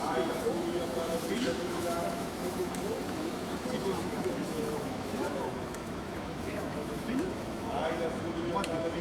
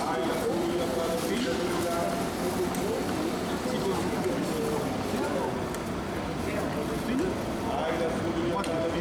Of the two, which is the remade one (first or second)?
first